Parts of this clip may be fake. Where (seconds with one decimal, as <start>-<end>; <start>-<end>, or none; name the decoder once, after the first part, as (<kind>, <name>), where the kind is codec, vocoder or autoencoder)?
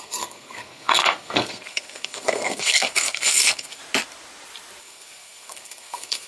0.0-3.8 (codec, SNAC); 4.8-6.3